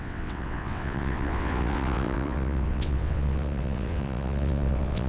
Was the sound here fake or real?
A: fake